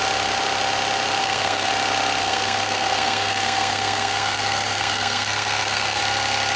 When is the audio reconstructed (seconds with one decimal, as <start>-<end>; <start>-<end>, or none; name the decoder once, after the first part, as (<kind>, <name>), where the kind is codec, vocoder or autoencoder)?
1.2-1.7 (codec, SNAC); 2.2-6.0